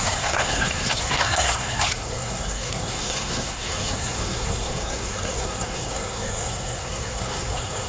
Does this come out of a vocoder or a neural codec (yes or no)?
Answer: yes